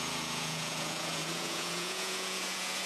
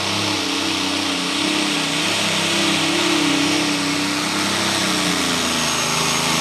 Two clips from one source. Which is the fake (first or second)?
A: first